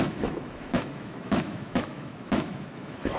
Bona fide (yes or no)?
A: no